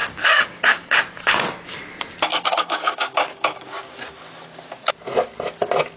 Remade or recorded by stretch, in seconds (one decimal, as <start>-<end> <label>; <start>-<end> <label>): 0.0-1.0 remade; 1.0-2.3 recorded; 2.3-4.0 remade; 4.0-6.0 recorded